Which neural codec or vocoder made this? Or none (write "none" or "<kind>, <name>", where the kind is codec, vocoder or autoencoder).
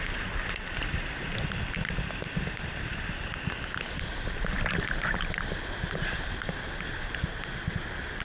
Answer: none